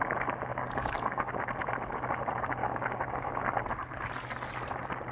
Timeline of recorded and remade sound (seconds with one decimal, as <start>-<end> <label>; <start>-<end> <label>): 0.0-0.5 recorded; 0.5-1.3 remade; 1.3-2.6 recorded; 2.6-3.3 remade; 3.3-5.1 recorded